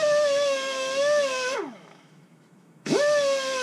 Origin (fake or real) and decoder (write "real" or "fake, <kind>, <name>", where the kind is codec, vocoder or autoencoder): fake, autoencoder, DAC-VAE